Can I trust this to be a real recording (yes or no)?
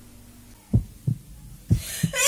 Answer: yes